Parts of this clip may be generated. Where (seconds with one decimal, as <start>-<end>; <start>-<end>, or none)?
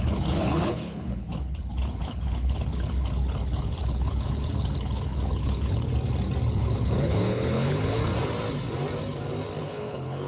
0.0-5.9; 6.5-8.0; 9.6-10.3